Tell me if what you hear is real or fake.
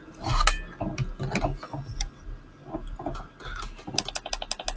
real